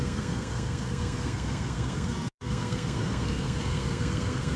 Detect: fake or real fake